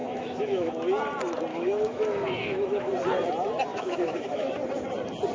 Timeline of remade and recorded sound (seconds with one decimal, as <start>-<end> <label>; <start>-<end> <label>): 0.0-0.7 remade; 0.7-1.5 recorded; 1.5-2.9 remade; 2.9-3.7 recorded; 3.7-4.5 remade; 4.5-5.3 recorded